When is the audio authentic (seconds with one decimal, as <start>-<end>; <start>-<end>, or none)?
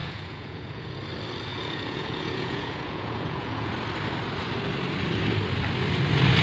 1.0-1.5; 3.7-6.4